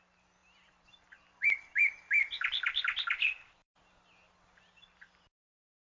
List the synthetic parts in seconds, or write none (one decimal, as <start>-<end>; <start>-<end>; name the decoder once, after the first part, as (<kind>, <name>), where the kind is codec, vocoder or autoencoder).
0.4-3.9 (vocoder, BigVGAN v2)